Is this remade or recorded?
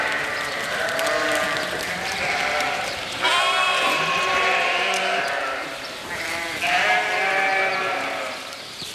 remade